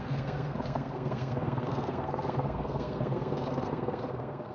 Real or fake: fake